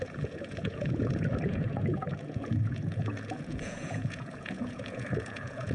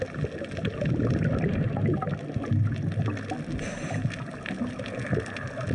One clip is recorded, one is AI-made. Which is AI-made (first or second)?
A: first